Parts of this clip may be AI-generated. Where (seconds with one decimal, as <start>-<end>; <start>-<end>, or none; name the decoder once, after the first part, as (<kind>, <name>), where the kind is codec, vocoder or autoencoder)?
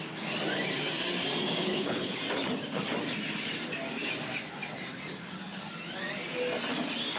1.6-2.2 (codec, HILCodec)